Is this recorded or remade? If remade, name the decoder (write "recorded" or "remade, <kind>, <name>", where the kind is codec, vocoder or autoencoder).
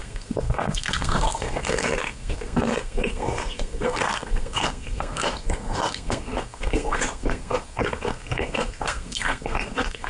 remade, codec, SNAC